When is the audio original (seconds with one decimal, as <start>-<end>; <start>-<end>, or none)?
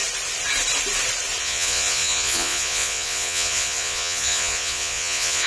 0.0-1.4